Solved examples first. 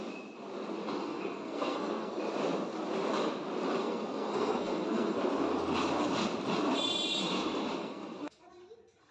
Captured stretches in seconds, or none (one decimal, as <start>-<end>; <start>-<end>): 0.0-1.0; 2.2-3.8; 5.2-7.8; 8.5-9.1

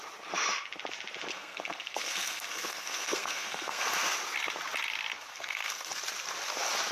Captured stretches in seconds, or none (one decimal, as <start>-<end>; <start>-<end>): 0.0-1.3; 3.8-5.3; 5.9-6.9

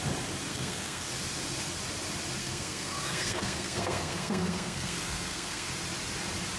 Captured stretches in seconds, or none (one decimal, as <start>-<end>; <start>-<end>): 0.0-0.5; 1.1-2.4; 5.7-6.6

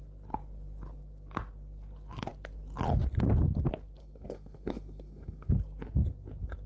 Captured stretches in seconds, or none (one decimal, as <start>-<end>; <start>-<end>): 0.0-4.0; 5.5-6.7